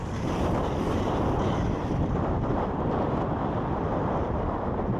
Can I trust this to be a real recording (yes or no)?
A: no